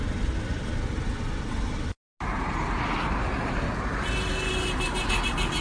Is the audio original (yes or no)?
yes